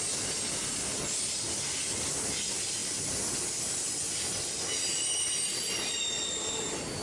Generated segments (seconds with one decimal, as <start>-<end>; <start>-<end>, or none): none